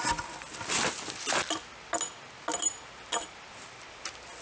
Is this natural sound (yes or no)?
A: yes